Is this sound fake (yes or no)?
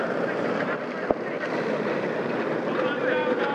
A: yes